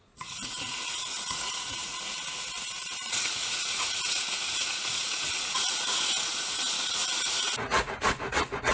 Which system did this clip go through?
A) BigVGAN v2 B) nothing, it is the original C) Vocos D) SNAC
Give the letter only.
C